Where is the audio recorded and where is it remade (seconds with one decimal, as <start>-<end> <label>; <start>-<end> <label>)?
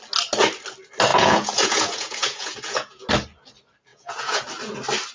0.0-1.1 recorded; 1.1-3.1 remade; 3.1-3.9 recorded; 3.9-4.4 remade; 4.4-5.1 recorded